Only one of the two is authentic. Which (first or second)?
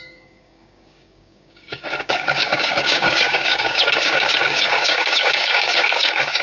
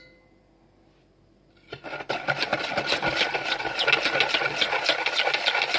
second